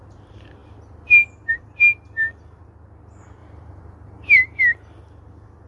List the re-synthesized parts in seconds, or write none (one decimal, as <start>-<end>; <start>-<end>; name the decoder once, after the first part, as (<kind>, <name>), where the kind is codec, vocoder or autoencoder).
3.4-4.6 (vocoder, BigVGAN v2)